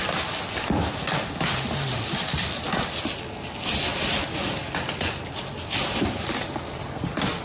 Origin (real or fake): real